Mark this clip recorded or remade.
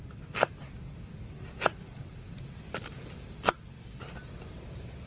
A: recorded